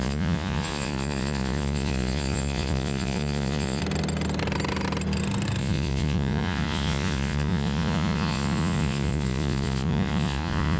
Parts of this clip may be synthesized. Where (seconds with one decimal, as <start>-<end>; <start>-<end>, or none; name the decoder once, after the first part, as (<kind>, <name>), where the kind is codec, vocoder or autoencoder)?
0.0-3.8 (vocoder, Vocos); 5.6-10.8